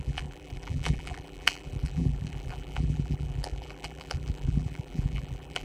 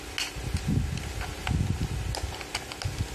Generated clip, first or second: first